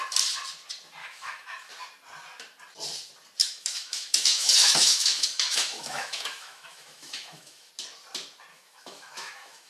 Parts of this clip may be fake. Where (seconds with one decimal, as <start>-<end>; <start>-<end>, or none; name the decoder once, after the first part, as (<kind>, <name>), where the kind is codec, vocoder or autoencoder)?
1.0-1.7 (autoencoder, DAC-VAE); 3.4-7.7; 8.5-9.7